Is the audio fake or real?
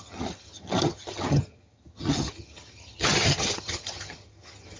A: fake